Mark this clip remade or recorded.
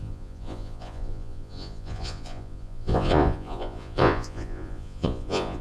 remade